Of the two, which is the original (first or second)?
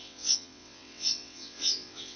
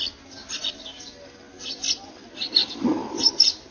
second